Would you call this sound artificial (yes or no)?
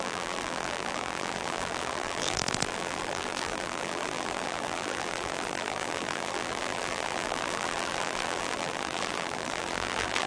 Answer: yes